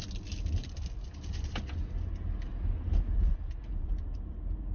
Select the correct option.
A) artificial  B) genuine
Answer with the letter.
B